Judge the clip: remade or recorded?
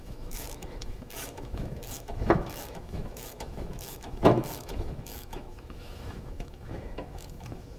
remade